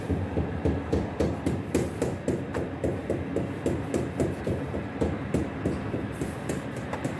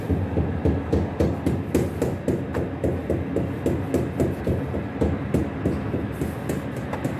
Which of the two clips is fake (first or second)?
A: first